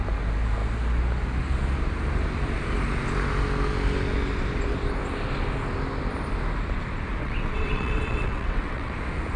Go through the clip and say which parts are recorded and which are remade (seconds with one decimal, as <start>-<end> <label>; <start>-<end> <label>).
0.0-7.2 recorded; 7.2-8.9 remade; 8.9-9.4 recorded